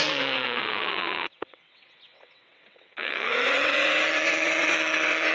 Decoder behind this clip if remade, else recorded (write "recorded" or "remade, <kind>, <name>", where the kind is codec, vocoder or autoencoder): remade, vocoder, WaveNeXt